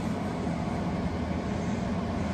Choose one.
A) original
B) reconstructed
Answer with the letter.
A